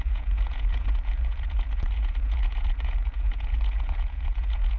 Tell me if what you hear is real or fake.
fake